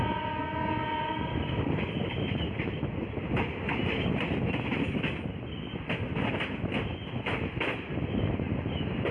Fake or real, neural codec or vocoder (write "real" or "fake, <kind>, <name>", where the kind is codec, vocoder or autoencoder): real